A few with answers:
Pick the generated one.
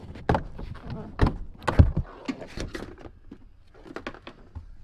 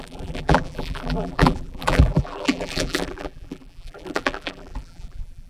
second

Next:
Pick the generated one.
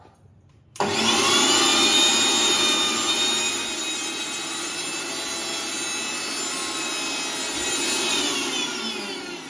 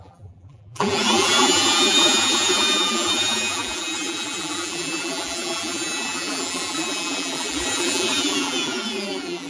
second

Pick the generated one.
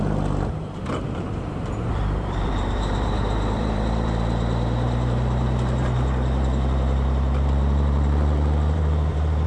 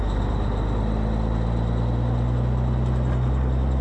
first